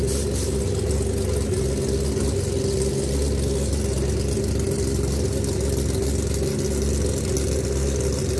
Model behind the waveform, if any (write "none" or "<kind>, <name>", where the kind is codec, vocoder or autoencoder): none